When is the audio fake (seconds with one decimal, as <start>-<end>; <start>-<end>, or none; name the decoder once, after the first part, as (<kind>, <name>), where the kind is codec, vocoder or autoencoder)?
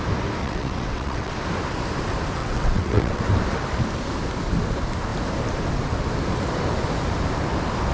0.4-1.3 (vocoder, WaveNeXt); 2.4-3.2